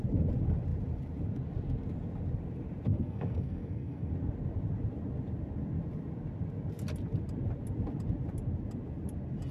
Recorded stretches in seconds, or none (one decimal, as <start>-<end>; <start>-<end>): 0.0-2.9; 4.1-9.5